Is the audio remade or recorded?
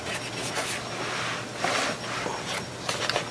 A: recorded